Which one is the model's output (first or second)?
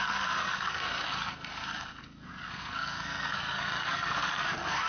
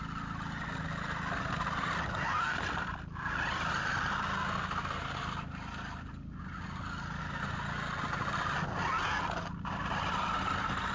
first